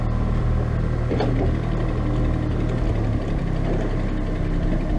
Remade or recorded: recorded